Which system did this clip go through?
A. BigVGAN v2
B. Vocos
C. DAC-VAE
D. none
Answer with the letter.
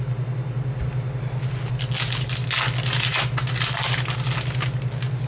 D